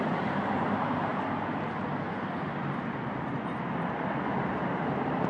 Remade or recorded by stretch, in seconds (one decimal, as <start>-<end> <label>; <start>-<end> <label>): 0.0-1.1 remade; 1.1-4.3 recorded; 4.3-5.3 remade